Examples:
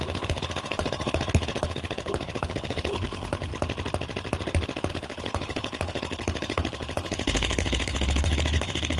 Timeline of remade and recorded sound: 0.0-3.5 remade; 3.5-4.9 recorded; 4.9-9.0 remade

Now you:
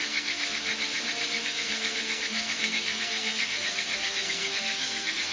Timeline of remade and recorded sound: 0.0-0.7 remade; 0.7-1.4 recorded; 1.4-5.3 remade

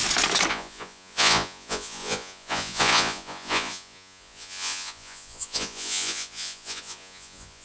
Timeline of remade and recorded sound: 0.0-0.5 recorded; 0.5-7.6 remade

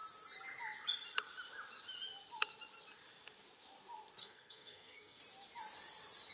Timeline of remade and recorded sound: 0.0-4.2 recorded; 4.2-5.2 remade; 5.2-6.3 recorded